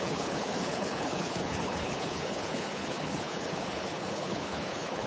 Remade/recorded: remade